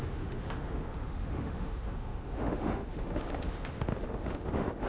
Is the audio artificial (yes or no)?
yes